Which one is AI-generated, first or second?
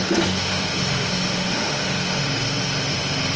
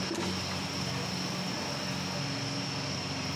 first